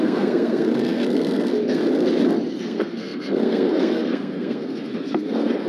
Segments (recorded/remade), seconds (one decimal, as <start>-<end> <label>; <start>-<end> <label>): 0.0-1.8 remade; 1.8-2.5 recorded; 2.5-5.7 remade